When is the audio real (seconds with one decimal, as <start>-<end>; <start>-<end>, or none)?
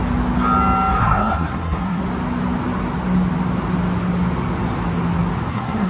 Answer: 0.0-1.0; 2.0-5.5